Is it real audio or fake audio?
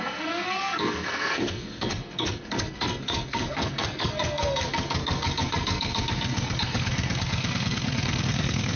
fake